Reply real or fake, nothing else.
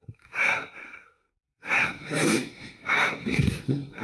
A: fake